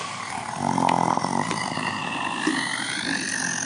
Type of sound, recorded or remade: recorded